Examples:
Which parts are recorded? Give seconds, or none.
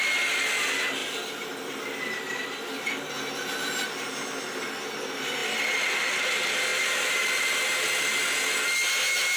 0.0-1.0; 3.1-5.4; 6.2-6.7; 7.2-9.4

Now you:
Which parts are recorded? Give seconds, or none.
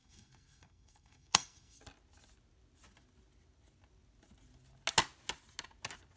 1.8-6.2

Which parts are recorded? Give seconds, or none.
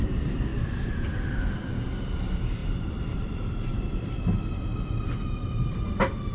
0.0-0.5; 1.5-2.6; 3.3-6.3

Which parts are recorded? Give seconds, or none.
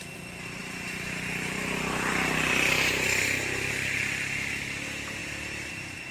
0.0-0.6; 3.7-5.2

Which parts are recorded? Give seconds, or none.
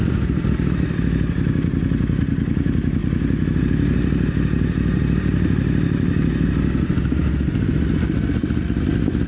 0.0-9.3